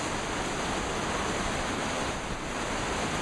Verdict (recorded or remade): recorded